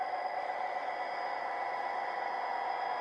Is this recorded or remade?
recorded